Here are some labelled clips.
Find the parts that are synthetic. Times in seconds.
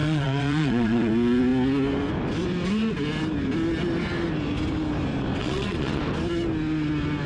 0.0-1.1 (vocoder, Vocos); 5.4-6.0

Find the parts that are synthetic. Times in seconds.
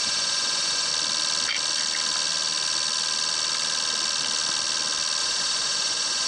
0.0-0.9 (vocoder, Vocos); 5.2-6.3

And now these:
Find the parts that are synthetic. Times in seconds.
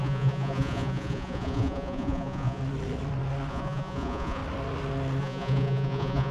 0.0-2.6 (vocoder, Vocos); 3.5-4.4; 5.2-6.3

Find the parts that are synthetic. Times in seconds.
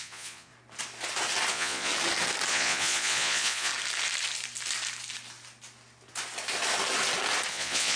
0.0-0.5 (vocoder, Vocos); 1.5-1.9; 2.5-3.7; 7.5-8.0